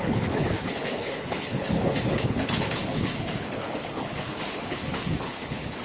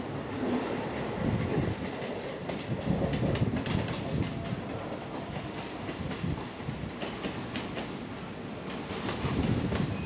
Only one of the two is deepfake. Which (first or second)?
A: first